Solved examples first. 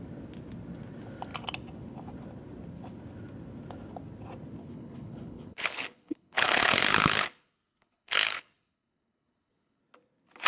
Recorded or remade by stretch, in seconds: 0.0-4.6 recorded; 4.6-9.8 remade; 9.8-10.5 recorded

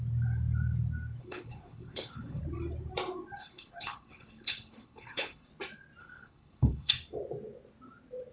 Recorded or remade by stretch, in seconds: 0.0-1.2 recorded; 1.2-2.4 remade; 2.4-3.4 recorded; 3.4-5.5 remade; 5.5-6.0 recorded; 6.0-6.9 remade; 6.9-8.3 recorded

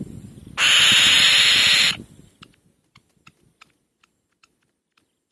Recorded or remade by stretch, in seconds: 0.0-5.3 recorded

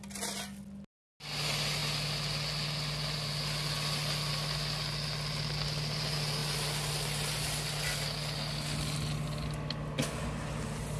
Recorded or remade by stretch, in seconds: 0.0-11.0 recorded

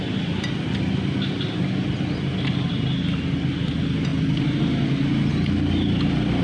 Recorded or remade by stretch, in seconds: 0.0-6.4 recorded